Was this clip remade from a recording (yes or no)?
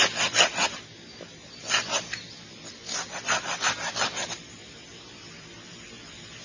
no